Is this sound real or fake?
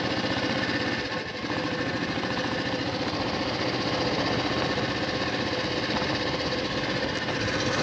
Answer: real